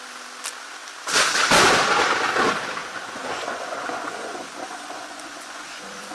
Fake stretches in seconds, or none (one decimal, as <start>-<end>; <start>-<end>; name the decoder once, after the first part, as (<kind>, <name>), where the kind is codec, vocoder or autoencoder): 2.8-6.1 (vocoder, Vocos)